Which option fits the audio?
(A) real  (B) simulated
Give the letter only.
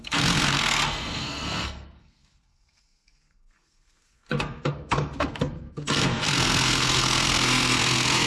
B